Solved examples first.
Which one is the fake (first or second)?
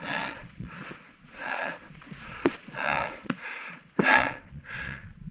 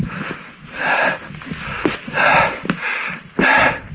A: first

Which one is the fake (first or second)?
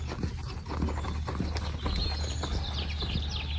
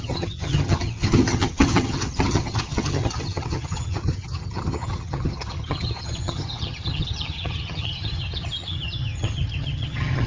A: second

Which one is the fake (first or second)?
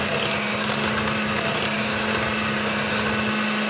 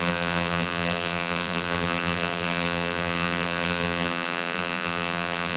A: second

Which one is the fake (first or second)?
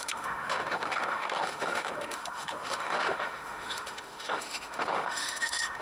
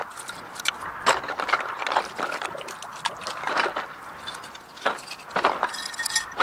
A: first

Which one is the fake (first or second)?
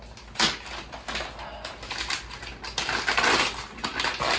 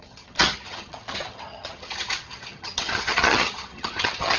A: second